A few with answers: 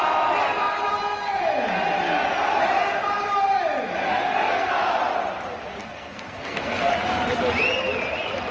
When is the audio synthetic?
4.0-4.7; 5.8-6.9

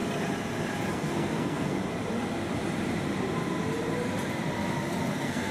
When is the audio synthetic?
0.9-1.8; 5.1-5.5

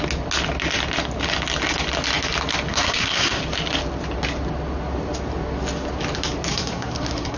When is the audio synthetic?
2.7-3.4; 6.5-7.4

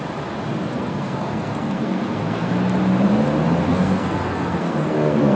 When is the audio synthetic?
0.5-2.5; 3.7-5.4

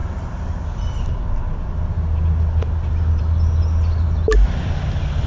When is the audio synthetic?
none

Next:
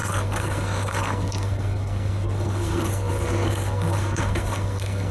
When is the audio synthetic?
0.0-5.1